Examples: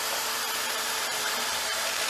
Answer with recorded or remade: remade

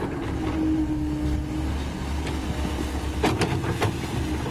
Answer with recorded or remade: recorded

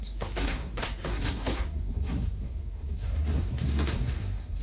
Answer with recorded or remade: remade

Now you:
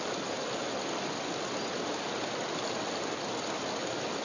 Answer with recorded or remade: recorded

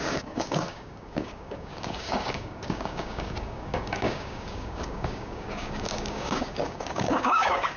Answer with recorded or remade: remade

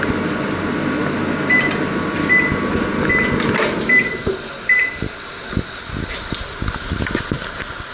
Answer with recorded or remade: recorded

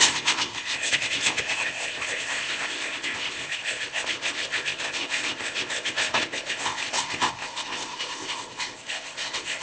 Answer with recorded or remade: remade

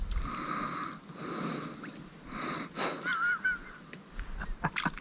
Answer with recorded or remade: recorded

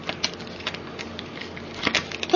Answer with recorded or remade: recorded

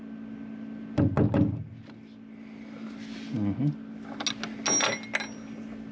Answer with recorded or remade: recorded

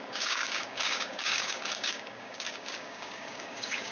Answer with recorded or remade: remade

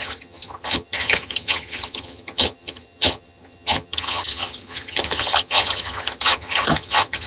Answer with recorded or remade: remade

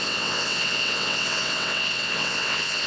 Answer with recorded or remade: remade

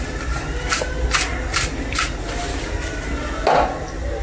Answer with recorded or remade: recorded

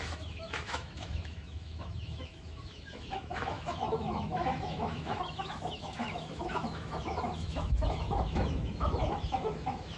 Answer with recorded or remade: remade